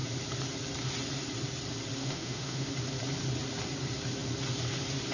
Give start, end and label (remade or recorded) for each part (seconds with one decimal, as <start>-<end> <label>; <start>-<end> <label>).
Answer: 0.0-2.0 recorded; 2.0-2.7 remade; 2.7-5.1 recorded